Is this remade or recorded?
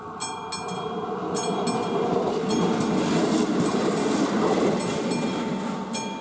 recorded